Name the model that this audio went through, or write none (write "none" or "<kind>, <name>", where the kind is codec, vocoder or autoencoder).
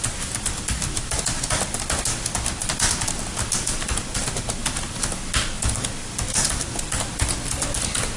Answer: none